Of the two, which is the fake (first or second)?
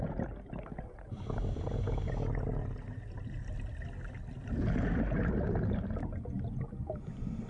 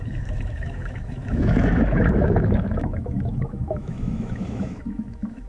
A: second